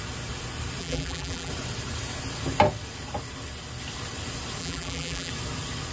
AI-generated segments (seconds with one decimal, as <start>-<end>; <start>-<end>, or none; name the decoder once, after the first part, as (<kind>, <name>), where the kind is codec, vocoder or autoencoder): 0.8-1.5 (vocoder, BigVGAN v2); 4.6-5.3